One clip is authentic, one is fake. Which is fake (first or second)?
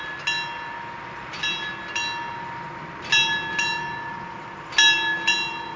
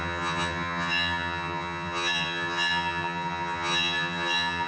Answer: second